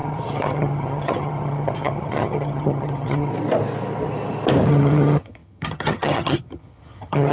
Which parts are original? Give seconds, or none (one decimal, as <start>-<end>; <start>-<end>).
3.3-4.7